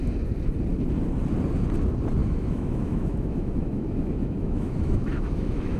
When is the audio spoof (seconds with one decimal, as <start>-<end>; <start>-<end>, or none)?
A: 2.2-5.8